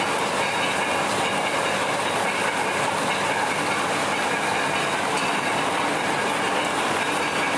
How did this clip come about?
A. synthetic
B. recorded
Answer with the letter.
B